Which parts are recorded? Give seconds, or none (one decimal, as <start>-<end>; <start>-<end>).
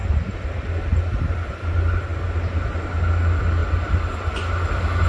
0.0-5.1